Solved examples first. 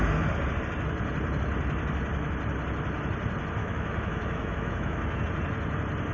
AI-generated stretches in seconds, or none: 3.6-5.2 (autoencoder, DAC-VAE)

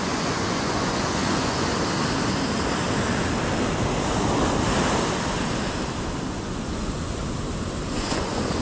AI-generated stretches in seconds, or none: 0.0-1.7 (vocoder, Vocos); 6.3-7.2; 7.9-8.6

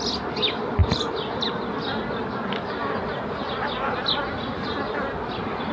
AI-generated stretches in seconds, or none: 0.8-1.6 (vocoder, BigVGAN v2)

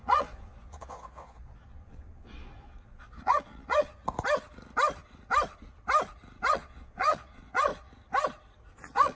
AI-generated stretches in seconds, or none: 0.0-4.0 (vocoder, Vocos); 6.5-7.7; 8.7-9.1